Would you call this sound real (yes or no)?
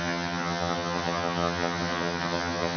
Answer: no